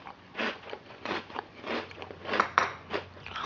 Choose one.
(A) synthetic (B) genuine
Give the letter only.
A